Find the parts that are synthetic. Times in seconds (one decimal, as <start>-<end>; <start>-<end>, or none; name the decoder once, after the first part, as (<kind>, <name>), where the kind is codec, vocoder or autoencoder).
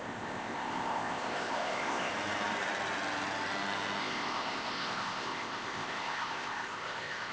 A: 0.0-2.1 (codec, ZipCodec); 4.0-7.3